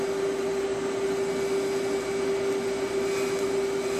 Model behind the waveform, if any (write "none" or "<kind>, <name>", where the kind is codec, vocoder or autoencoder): none